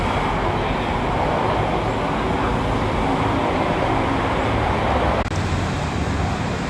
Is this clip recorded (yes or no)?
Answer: yes